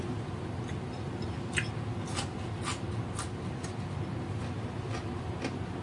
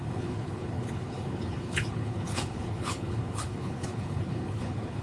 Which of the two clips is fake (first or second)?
second